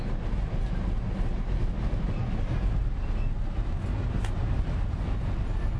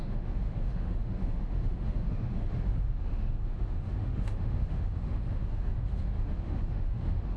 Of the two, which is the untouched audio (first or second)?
first